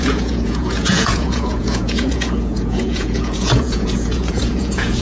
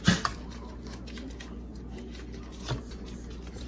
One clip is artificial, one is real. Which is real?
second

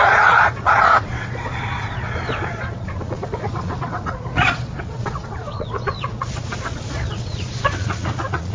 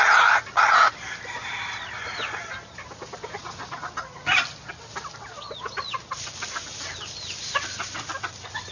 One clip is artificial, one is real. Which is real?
second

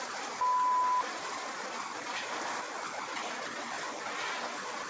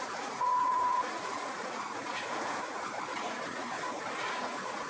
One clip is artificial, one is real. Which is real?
first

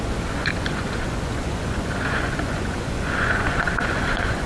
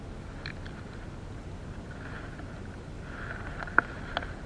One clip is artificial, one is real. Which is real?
second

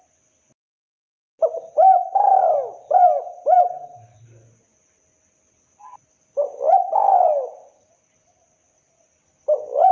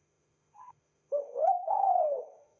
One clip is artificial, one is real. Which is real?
first